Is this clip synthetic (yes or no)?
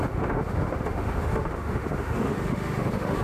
yes